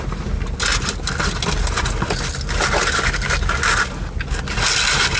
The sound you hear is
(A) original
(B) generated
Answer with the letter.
A